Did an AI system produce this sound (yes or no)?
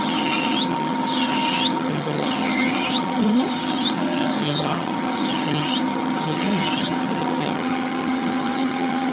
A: yes